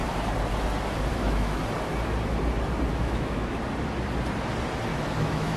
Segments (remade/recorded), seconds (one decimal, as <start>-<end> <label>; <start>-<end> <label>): 0.0-1.1 recorded; 1.1-1.6 remade; 1.6-2.9 recorded; 2.9-3.6 remade; 3.6-4.9 recorded; 4.9-5.6 remade